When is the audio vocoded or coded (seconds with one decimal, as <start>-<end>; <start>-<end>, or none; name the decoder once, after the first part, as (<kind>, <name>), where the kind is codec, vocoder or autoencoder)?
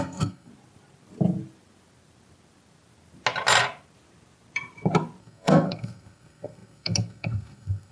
0.0-0.5 (codec, SNAC); 5.2-7.9